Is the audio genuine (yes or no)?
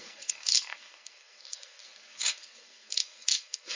no